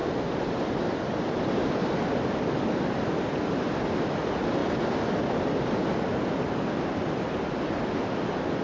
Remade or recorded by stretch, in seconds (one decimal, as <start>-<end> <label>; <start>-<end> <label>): 0.0-0.7 recorded; 0.7-1.8 remade; 1.8-2.4 recorded; 2.4-4.6 remade; 4.6-5.4 recorded; 5.4-8.6 remade